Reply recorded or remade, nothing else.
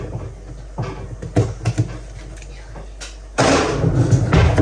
recorded